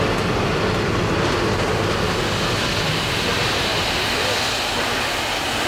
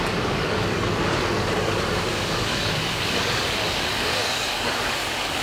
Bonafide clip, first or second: first